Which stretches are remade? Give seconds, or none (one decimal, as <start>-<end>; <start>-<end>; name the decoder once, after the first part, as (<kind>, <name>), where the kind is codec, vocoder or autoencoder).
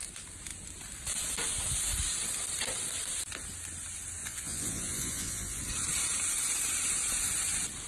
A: 4.2-5.6 (vocoder, Vocos)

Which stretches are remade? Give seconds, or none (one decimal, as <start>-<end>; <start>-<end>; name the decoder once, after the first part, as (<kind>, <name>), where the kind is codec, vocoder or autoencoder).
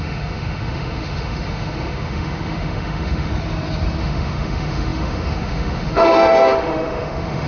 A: 0.0-3.3 (autoencoder, DAC-VAE); 4.0-7.5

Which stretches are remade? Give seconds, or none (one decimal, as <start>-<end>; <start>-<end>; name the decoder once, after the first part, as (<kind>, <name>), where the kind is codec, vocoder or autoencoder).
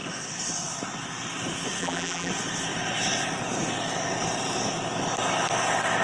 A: 1.8-2.3 (vocoder, BigVGAN v2)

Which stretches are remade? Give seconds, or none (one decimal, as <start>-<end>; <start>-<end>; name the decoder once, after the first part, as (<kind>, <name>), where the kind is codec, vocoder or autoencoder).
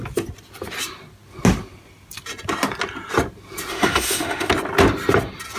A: 3.7-4.5 (autoencoder, DAC-VAE)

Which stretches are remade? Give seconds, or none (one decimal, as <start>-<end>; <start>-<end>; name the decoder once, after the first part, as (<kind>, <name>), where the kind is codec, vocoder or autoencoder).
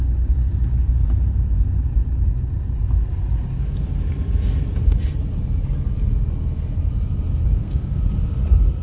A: 7.5-8.1 (codec, SNAC)